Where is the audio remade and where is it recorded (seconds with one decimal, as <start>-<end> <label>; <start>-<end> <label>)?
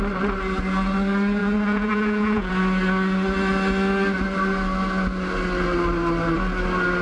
0.0-1.4 recorded; 1.4-2.5 remade; 2.5-7.0 recorded